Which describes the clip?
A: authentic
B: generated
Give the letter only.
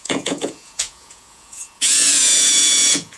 B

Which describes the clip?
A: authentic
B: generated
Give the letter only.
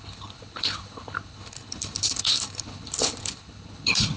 B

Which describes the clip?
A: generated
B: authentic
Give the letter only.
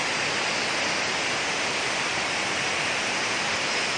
B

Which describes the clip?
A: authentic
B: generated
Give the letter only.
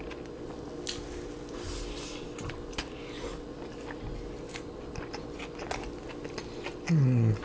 A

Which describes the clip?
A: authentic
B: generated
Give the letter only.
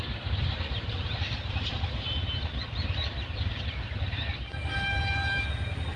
B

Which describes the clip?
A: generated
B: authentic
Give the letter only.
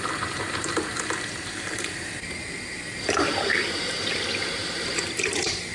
A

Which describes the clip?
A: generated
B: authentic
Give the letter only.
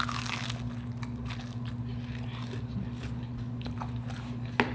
B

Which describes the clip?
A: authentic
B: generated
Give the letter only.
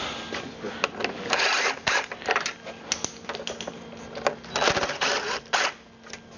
A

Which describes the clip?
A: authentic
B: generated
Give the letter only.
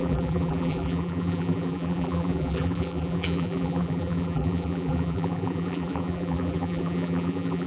B